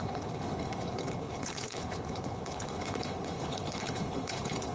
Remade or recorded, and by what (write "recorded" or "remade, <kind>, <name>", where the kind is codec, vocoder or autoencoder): remade, codec, HILCodec